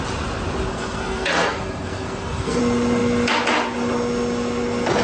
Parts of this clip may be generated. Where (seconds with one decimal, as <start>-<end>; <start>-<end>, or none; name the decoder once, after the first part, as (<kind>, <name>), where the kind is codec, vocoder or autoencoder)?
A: 0.7-2.6 (codec, SNAC)